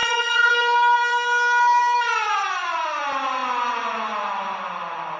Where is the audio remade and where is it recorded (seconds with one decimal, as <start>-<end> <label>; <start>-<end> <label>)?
0.0-0.5 remade; 0.5-5.2 recorded